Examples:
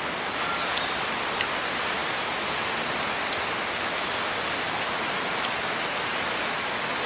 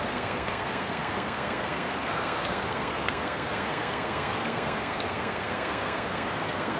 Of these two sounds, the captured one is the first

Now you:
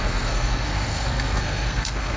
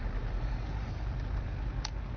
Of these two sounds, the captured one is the second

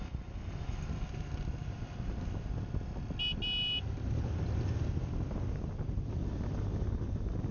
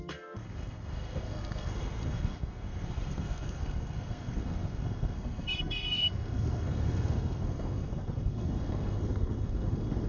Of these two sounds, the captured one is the first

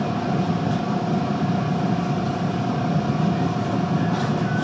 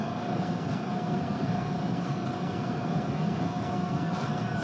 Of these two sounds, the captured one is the first